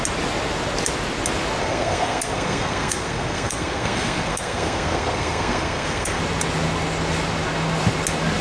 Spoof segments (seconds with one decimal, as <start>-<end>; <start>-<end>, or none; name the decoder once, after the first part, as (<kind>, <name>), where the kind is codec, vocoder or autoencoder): 1.6-6.2 (codec, SNAC)